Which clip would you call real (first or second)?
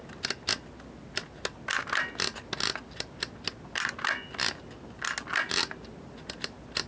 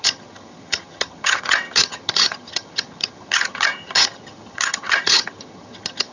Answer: first